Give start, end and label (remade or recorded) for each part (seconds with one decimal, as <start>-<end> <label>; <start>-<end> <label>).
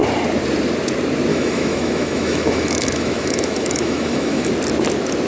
0.0-1.3 recorded; 1.3-4.5 remade; 4.5-5.3 recorded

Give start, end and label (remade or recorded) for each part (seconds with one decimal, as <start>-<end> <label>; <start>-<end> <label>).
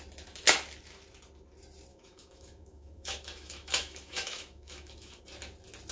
0.0-1.9 recorded; 1.9-5.2 remade; 5.2-5.9 recorded